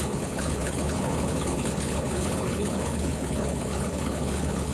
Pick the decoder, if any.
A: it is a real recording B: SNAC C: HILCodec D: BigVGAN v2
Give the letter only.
C